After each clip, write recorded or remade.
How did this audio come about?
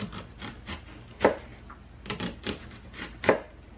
recorded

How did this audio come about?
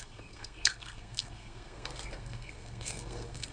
remade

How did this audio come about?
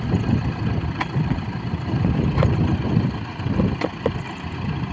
recorded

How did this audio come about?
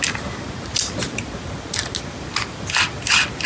recorded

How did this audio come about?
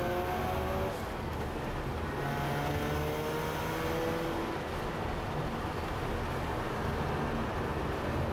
recorded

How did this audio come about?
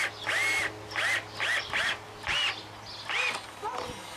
recorded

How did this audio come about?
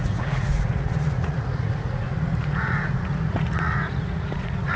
remade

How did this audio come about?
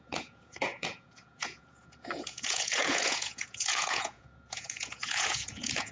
remade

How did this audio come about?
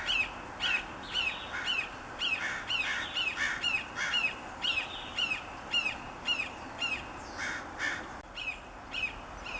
recorded